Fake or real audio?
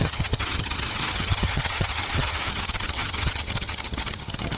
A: fake